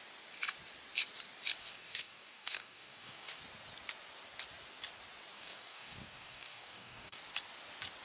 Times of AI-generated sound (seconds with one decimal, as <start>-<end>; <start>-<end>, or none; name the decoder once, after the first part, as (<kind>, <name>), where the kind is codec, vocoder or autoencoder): 1.6-3.4 (codec, DAC); 5.3-7.2